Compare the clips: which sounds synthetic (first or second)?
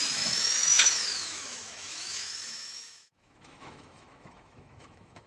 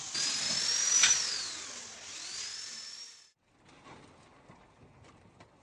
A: first